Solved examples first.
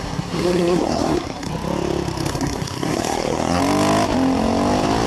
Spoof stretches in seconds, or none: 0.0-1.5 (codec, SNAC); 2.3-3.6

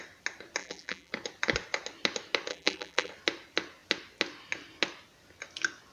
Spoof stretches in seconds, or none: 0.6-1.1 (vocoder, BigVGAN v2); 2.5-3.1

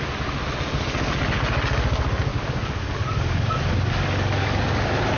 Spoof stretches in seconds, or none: 2.3-4.8 (codec, DAC)

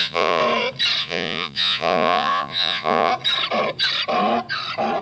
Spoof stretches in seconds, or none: 0.0-0.4 (vocoder, Vocos); 1.0-3.1

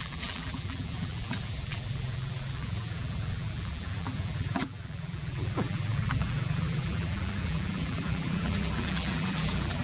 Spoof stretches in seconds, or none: 0.0-9.8 (vocoder, BigVGAN v2)

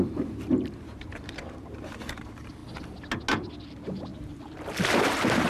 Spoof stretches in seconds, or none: 0.0-2.6 (vocoder, BigVGAN v2); 3.6-5.5